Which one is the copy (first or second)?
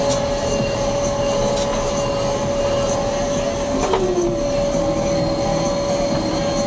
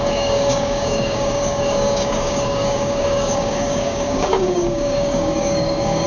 second